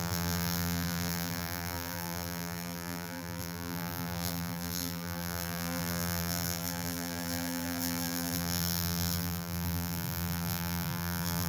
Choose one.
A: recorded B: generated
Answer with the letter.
B